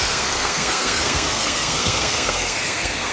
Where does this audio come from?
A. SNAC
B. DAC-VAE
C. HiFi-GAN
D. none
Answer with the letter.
A